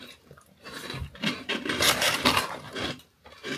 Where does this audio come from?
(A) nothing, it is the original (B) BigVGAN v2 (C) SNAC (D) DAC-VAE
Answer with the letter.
B